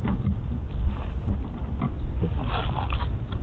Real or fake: real